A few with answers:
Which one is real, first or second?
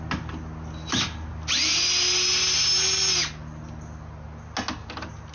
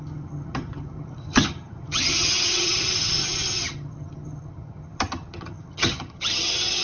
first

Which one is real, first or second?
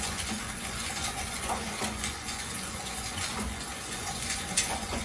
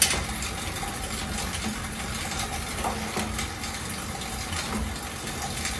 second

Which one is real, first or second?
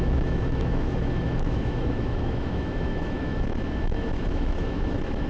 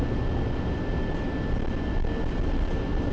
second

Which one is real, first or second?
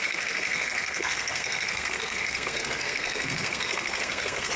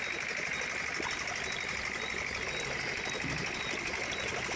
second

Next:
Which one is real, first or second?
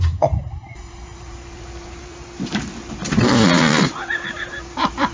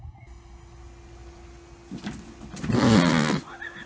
second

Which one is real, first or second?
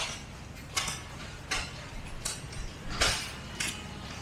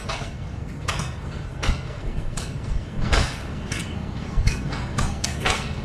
first